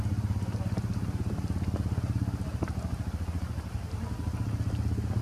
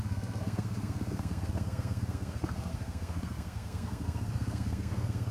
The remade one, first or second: second